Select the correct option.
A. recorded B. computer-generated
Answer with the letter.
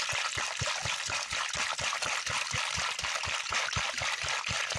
A